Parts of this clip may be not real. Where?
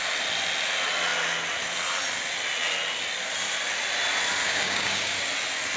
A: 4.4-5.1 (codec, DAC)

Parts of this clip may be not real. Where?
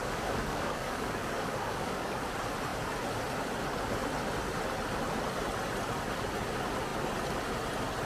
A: 0.0-2.3 (codec, DAC)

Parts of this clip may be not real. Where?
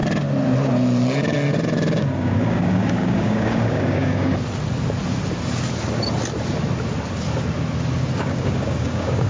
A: 2.0-4.3 (codec, DAC); 8.2-9.3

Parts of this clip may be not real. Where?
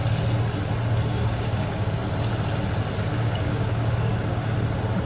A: 1.1-2.0 (codec, DAC); 3.1-4.5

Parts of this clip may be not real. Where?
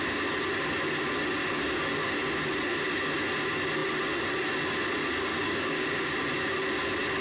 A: 1.4-2.1 (codec, DAC); 5.3-6.1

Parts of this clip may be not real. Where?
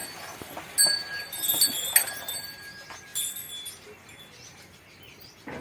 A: none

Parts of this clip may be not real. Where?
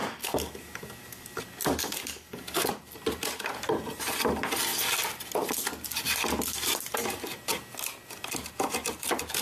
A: 0.0-1.4 (codec, DAC); 1.8-2.7